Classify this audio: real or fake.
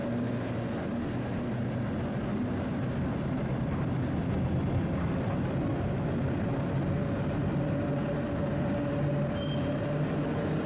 real